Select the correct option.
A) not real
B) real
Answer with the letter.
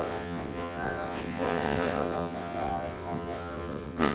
A